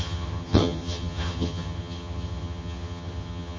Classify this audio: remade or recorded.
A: remade